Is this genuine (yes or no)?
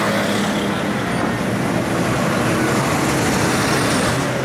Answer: yes